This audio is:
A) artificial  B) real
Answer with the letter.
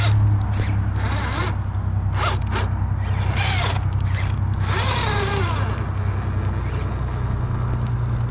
B